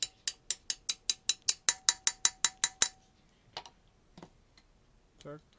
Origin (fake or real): real